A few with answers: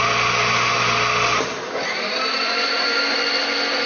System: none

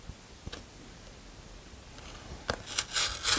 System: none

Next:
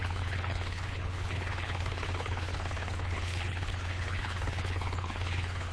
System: codec, HILCodec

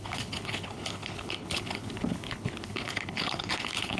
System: codec, HILCodec